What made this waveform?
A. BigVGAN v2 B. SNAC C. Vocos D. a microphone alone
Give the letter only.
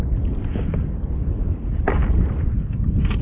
D